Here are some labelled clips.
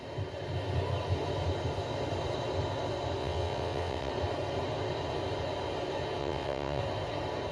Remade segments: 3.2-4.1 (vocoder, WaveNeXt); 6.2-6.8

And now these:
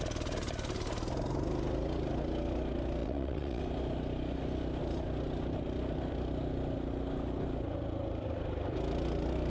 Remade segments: 3.0-3.6 (vocoder, WaveNeXt)

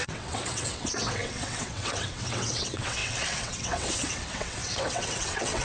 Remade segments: 0.0-5.6 (vocoder, WaveNeXt)

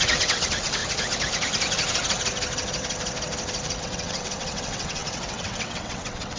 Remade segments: 0.0-0.8 (vocoder, WaveNeXt); 3.8-6.4

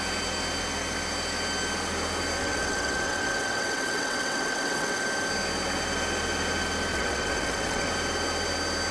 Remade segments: 2.4-5.0 (vocoder, WaveNeXt); 6.9-7.9